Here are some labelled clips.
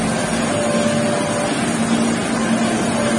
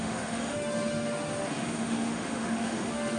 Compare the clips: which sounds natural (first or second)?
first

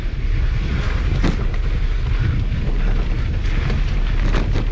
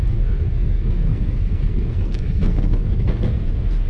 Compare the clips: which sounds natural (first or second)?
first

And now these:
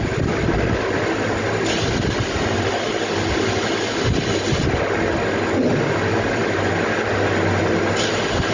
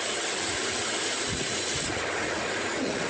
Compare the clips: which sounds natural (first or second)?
first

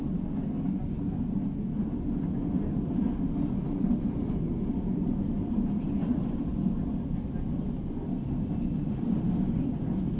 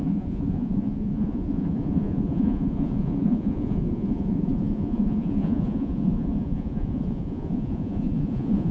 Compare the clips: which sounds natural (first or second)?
first